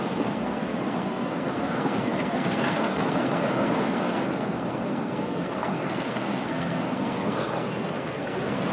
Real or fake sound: fake